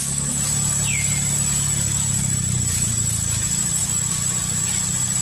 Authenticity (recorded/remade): recorded